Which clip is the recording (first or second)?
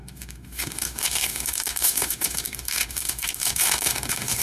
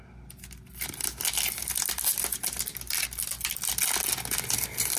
second